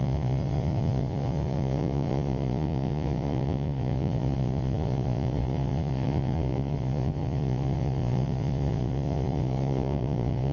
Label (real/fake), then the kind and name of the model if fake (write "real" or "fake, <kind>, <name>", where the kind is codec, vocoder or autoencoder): fake, vocoder, Vocos